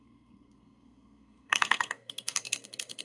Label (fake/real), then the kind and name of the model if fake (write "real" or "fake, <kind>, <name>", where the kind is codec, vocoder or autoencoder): fake, codec, SNAC